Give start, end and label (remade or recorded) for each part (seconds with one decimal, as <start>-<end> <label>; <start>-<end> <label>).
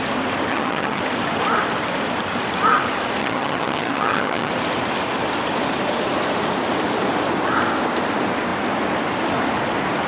0.0-0.5 recorded; 0.5-1.0 remade; 1.0-3.2 recorded; 3.2-4.5 remade; 4.5-10.1 recorded